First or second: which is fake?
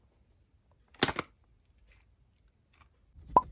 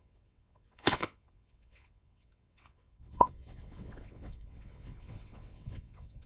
second